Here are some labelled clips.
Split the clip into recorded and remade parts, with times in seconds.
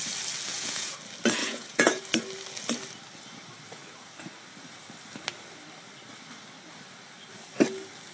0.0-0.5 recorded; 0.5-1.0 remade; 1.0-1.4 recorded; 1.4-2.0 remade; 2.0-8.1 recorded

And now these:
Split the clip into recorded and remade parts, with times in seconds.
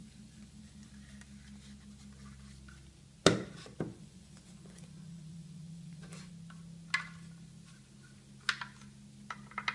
0.0-0.9 remade; 0.9-3.9 recorded; 3.9-6.3 remade; 6.3-9.7 recorded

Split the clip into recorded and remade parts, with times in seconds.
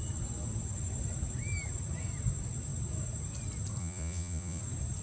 0.0-3.8 recorded; 3.8-4.6 remade; 4.6-5.0 recorded